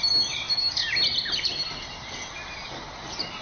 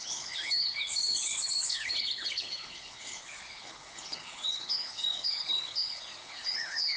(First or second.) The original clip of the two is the first